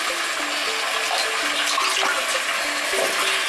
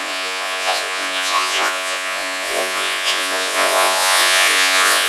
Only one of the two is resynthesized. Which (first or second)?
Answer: second